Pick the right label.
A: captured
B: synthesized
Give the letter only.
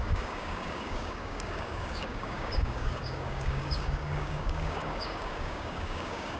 B